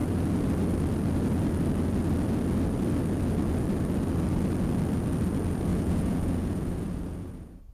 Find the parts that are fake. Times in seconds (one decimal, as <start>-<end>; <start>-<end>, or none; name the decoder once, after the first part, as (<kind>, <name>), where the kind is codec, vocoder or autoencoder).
5.7-7.7 (vocoder, Vocos)